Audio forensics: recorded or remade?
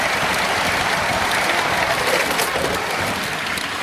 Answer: recorded